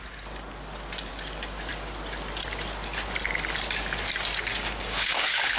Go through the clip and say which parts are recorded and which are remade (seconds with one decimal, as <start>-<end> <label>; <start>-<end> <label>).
0.0-4.5 recorded; 4.5-5.6 remade